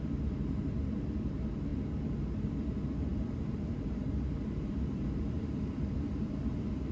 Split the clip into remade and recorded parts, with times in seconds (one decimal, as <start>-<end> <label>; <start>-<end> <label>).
0.0-6.9 remade